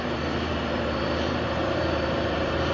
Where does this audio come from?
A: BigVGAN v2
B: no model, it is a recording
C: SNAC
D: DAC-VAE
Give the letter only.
A